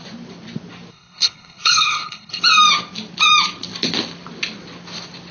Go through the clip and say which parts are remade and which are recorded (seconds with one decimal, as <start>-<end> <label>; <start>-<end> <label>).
0.0-0.9 recorded; 0.9-2.4 remade; 2.4-5.3 recorded